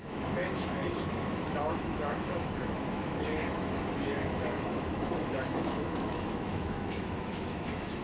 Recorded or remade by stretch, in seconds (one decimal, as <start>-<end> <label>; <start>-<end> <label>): 0.0-8.0 remade